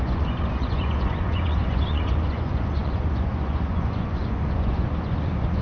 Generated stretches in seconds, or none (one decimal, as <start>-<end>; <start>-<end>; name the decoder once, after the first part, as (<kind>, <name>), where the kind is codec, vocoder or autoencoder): 0.0-5.6 (vocoder, Vocos)